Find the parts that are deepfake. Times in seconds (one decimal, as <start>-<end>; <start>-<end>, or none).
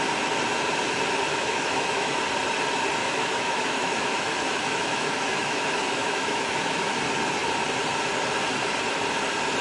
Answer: 1.3-2.2; 3.0-7.0